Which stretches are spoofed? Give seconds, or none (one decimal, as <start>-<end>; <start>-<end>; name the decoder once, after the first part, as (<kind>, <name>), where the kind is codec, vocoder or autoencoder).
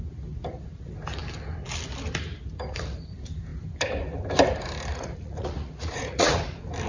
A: 4.9-6.4 (vocoder, Vocos)